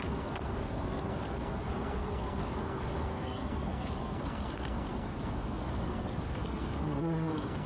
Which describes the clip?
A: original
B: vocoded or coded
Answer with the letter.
B